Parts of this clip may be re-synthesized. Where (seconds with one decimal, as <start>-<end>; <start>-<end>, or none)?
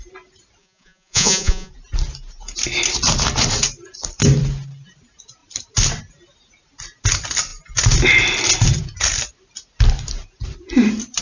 0.6-1.7